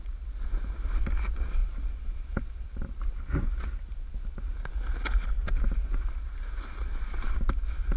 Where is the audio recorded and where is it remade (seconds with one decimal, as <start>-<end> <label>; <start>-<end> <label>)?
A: 0.0-8.0 recorded